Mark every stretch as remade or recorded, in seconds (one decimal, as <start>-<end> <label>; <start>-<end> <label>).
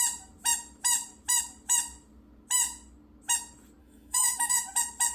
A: 0.0-3.8 recorded; 3.8-4.6 remade; 4.6-5.1 recorded